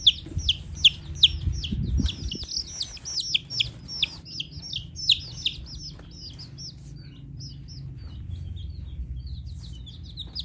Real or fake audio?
real